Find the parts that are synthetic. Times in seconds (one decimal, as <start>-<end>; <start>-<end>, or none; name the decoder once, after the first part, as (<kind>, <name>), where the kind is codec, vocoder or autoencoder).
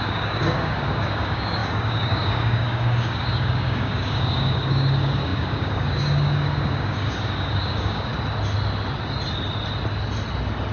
0.0-8.1 (codec, DAC)